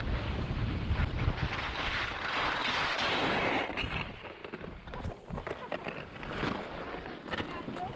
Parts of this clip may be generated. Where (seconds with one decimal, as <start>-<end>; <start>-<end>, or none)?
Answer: 0.0-2.6; 3.8-6.7; 7.3-8.0